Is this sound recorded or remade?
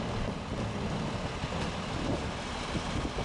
recorded